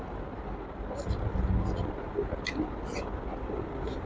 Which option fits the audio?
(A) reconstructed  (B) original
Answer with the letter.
B